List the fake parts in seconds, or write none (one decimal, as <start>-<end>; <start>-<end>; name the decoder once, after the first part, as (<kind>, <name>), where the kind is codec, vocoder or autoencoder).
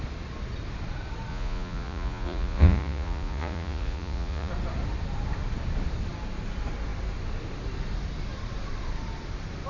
1.3-4.5 (vocoder, Vocos)